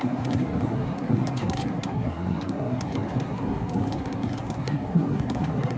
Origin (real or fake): fake